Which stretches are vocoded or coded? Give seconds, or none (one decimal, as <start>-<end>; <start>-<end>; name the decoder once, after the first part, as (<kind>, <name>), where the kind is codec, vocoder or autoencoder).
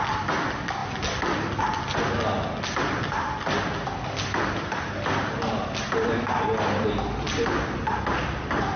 none